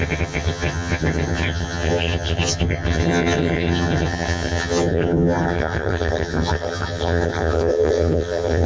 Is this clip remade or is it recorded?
remade